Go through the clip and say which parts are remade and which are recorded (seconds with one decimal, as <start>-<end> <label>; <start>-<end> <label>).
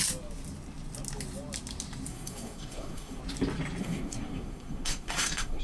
0.0-2.1 recorded; 2.1-3.2 remade; 3.2-3.8 recorded; 3.8-5.6 remade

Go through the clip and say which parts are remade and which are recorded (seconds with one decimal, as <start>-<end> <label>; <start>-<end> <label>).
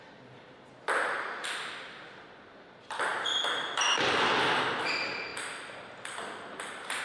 0.0-7.0 recorded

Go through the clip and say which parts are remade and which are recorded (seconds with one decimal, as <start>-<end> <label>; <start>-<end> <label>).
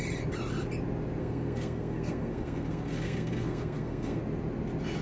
0.0-1.2 recorded; 1.2-4.2 remade; 4.2-5.0 recorded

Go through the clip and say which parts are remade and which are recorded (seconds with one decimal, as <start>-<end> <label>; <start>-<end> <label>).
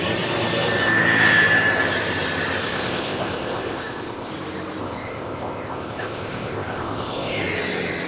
0.0-2.6 recorded; 2.6-4.3 remade; 4.3-4.8 recorded; 4.8-7.4 remade; 7.4-8.1 recorded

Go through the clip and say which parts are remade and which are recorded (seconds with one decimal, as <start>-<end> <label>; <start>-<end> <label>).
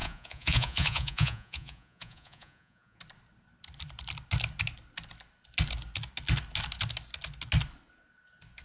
0.0-3.0 remade; 3.0-8.6 recorded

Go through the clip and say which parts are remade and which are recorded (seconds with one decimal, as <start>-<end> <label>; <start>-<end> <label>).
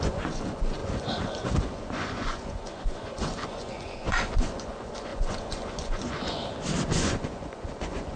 0.0-6.4 remade; 6.4-6.9 recorded; 6.9-8.2 remade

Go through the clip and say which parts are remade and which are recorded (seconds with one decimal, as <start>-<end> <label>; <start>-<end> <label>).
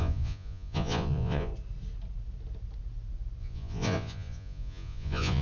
0.0-1.5 remade; 1.5-3.4 recorded; 3.4-5.4 remade